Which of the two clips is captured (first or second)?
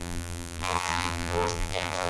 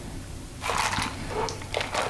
second